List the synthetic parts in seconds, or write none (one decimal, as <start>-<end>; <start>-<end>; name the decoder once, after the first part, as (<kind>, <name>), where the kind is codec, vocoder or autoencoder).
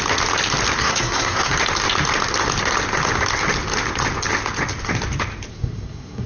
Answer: 0.8-1.5 (codec, SNAC); 5.5-6.3